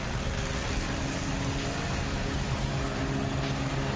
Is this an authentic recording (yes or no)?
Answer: yes